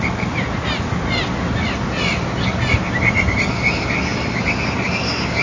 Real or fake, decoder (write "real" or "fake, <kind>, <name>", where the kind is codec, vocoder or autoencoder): real